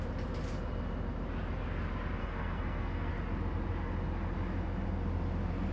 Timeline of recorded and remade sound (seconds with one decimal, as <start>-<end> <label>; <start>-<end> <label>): 0.0-2.2 recorded; 2.2-3.1 remade; 3.1-5.7 recorded